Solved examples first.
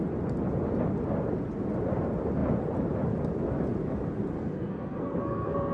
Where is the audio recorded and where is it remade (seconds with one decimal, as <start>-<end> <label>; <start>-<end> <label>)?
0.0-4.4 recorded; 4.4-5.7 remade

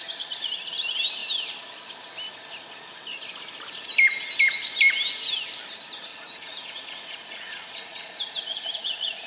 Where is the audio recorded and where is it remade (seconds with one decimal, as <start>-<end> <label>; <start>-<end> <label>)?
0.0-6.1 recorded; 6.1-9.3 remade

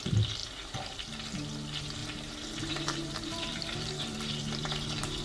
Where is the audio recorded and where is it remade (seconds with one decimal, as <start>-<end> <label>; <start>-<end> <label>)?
0.0-2.0 recorded; 2.0-5.2 remade